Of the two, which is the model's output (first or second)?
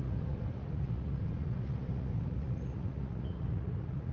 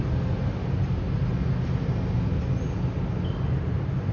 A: first